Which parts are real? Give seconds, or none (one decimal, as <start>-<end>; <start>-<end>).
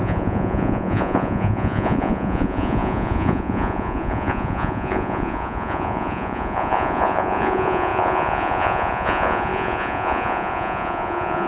none